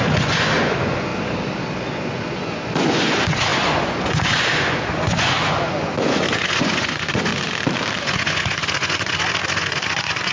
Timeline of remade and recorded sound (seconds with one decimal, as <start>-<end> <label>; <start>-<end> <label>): 0.0-1.1 remade; 1.1-1.9 recorded; 1.9-7.3 remade; 7.3-8.0 recorded; 8.0-10.3 remade